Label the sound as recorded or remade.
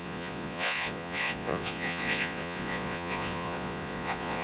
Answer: remade